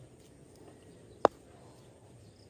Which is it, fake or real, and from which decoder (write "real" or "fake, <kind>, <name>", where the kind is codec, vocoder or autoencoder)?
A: real